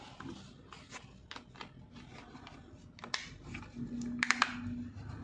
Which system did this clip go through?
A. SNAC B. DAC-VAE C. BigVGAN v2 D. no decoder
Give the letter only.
D